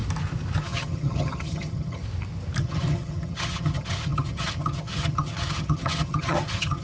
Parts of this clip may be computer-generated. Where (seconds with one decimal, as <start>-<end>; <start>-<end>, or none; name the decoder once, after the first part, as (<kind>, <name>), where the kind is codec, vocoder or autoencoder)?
0.6-2.0 (vocoder, HiFi-GAN); 2.6-6.8